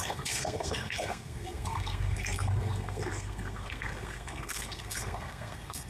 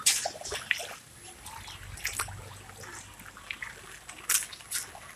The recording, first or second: second